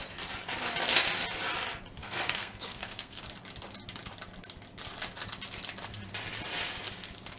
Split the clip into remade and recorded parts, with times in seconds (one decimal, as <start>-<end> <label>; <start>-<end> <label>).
0.0-2.0 recorded; 2.0-3.2 remade; 3.2-7.4 recorded